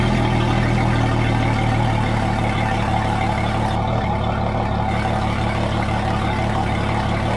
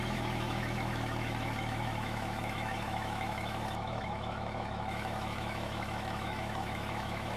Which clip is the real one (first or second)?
first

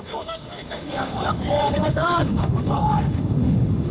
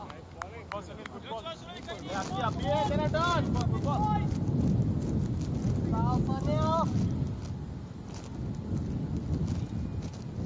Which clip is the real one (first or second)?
second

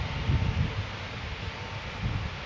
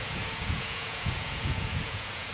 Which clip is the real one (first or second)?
first